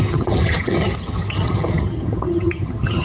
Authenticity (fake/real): fake